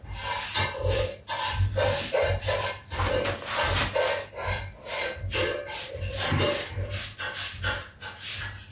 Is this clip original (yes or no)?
yes